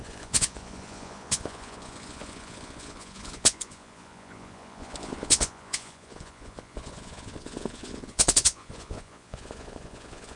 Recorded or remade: remade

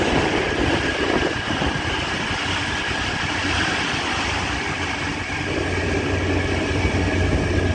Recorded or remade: recorded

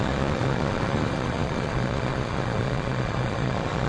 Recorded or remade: remade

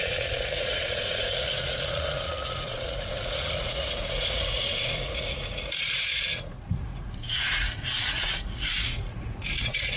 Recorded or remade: remade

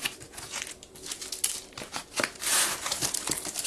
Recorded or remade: recorded